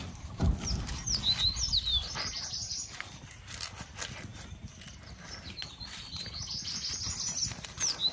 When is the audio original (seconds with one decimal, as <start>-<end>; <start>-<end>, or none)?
0.0-8.1